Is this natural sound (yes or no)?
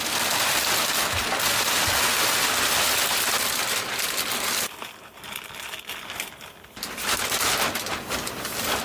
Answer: yes